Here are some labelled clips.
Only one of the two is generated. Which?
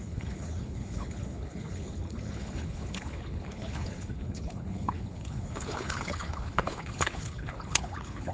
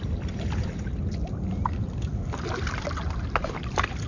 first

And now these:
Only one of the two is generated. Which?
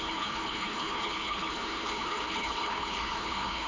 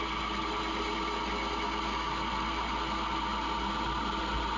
first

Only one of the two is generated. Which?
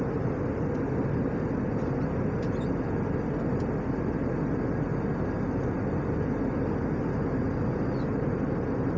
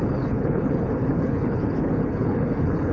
second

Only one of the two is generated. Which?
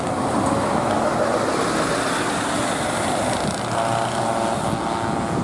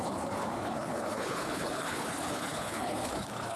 second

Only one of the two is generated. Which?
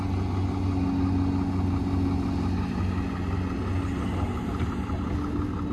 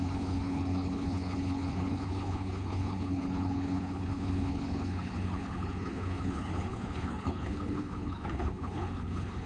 second